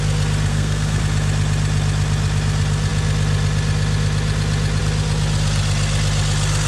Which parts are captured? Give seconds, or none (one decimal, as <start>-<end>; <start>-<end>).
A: 0.0-0.5; 1.0-6.7